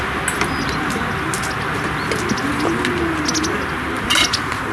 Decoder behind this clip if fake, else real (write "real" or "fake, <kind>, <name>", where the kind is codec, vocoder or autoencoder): real